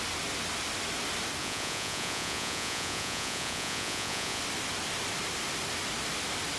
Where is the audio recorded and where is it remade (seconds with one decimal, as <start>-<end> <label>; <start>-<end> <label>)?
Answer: 0.0-1.4 recorded; 1.4-4.4 remade; 4.4-6.6 recorded